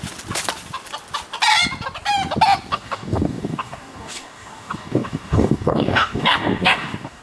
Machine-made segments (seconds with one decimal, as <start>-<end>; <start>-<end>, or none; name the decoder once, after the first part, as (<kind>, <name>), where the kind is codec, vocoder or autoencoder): 2.7-7.2 (codec, DAC)